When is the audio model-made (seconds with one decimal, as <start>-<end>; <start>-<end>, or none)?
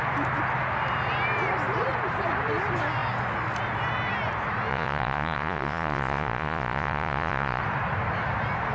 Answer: 4.7-7.6